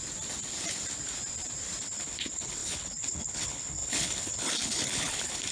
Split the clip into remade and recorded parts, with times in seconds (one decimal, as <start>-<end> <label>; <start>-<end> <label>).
0.0-1.8 recorded; 1.8-5.5 remade